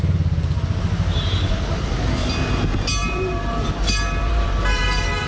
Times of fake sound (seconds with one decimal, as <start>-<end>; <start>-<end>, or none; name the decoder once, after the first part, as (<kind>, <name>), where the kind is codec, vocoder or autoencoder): 1.1-2.1 (vocoder, BigVGAN v2); 3.0-3.7; 4.2-4.8